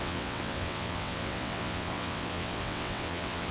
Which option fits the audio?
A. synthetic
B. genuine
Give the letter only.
A